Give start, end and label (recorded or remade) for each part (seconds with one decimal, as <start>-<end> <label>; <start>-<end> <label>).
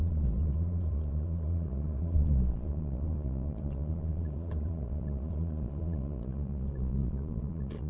0.0-7.9 remade